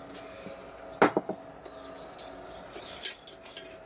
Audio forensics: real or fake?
real